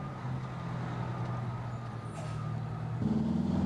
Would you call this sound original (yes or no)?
yes